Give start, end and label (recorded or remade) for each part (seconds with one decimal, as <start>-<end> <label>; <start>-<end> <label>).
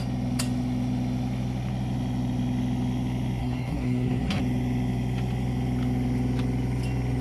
0.0-3.4 recorded; 3.4-4.4 remade; 4.4-7.2 recorded